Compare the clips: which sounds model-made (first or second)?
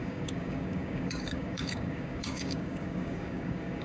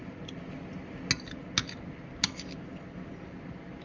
first